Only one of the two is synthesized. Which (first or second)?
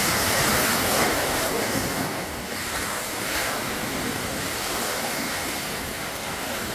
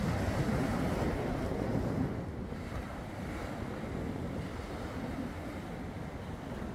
first